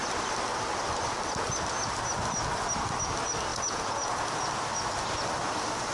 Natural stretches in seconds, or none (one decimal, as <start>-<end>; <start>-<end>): 0.0-3.5; 4.5-5.9